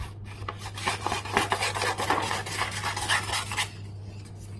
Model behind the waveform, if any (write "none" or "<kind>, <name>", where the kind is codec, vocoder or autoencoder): none